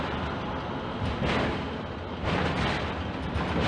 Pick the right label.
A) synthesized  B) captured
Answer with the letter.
B